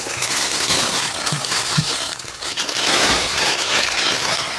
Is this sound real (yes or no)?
no